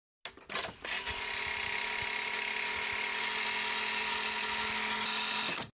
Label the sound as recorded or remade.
recorded